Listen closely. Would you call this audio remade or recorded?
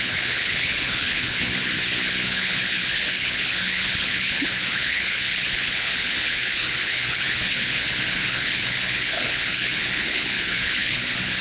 remade